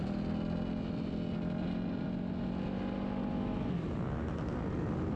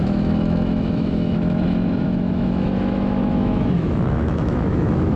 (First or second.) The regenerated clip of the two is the second